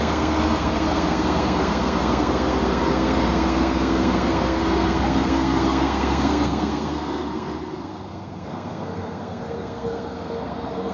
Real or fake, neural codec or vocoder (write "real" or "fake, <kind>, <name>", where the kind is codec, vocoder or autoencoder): fake, codec, SNAC